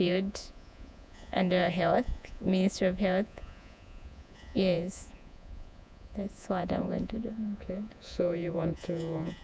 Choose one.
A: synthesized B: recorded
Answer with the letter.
A